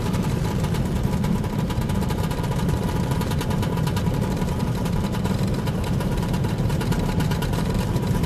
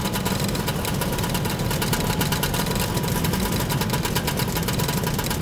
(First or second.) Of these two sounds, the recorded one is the second